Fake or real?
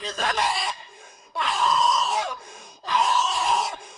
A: fake